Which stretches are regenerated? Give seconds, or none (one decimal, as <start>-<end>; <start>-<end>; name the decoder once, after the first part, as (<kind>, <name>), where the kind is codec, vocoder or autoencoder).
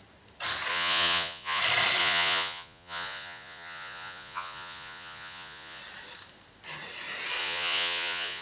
0.7-1.6 (vocoder, Vocos); 2.0-5.8; 7.4-8.4